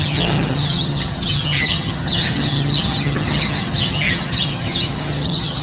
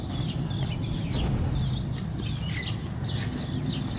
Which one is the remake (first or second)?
first